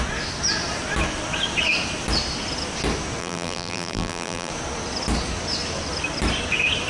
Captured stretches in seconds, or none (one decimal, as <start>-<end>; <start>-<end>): 0.0-3.2; 4.5-6.9